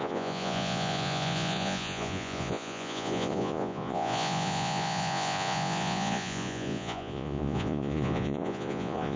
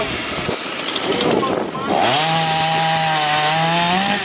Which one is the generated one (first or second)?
first